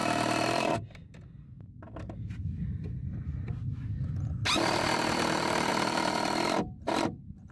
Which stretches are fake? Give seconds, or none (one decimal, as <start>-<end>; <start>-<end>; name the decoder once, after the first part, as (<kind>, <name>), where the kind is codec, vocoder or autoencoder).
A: 2.4-3.3 (vocoder, BigVGAN v2); 4.5-7.5